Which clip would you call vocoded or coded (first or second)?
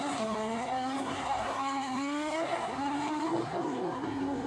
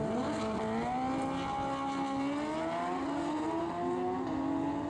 first